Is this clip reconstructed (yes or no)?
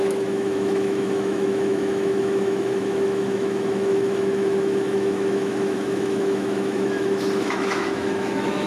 yes